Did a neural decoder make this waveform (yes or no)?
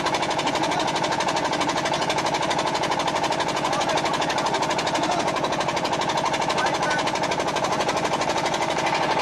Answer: yes